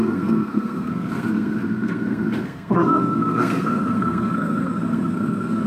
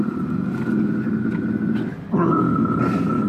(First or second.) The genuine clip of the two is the second